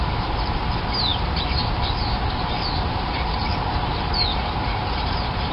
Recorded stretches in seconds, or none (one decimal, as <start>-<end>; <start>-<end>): 0.0-5.5